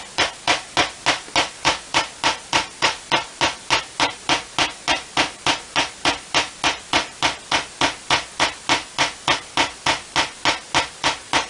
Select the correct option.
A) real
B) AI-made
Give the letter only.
A